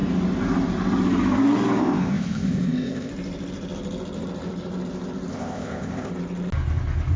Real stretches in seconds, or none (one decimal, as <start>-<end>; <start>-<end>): 0.0-1.8; 3.1-5.3; 6.1-7.2